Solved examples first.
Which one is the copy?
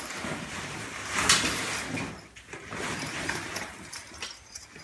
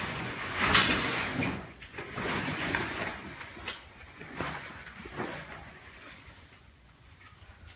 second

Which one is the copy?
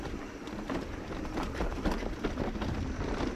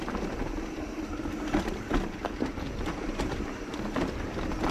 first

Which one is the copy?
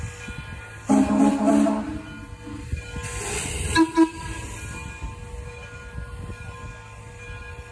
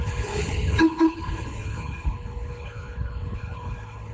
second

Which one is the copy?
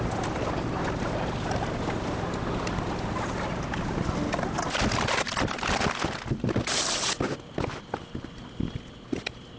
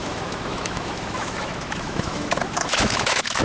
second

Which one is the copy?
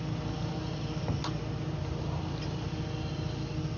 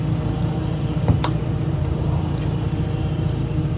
second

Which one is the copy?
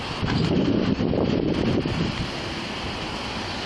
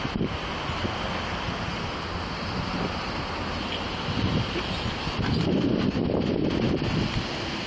first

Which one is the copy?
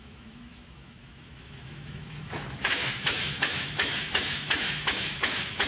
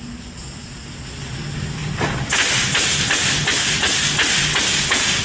first